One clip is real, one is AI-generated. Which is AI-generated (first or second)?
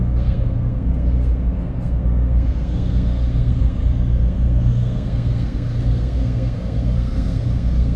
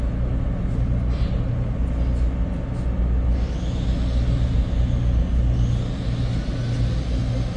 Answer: first